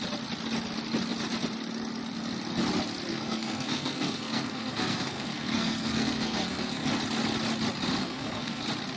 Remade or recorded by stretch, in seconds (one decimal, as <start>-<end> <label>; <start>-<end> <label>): 0.0-3.1 recorded; 3.1-6.9 remade; 6.9-8.0 recorded; 8.0-8.6 remade; 8.6-9.0 recorded